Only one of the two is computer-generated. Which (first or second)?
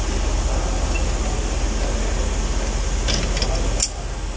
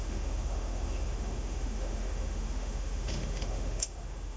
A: second